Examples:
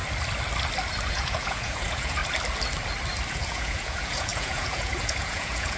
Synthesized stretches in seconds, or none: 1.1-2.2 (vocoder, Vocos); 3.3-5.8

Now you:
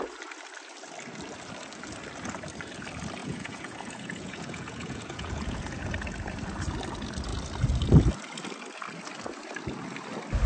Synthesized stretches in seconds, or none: 3.2-5.8 (vocoder, Vocos)

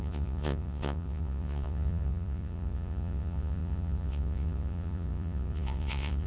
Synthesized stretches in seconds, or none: 0.0-6.3 (vocoder, Vocos)

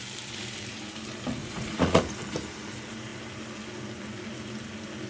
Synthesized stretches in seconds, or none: 1.4-2.0 (vocoder, Vocos)

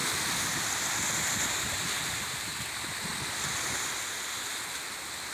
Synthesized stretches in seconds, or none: none

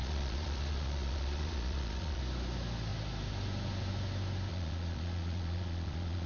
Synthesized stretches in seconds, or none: 0.0-2.2 (vocoder, Vocos); 4.5-6.3